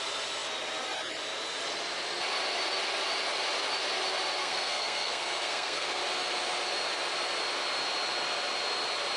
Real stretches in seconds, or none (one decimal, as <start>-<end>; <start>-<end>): 0.0-4.4; 6.0-9.2